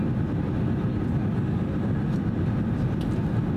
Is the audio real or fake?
real